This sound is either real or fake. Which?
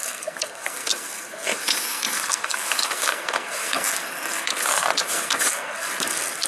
fake